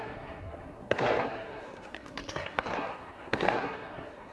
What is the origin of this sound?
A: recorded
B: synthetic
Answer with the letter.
B